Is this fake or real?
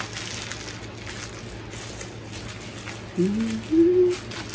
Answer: real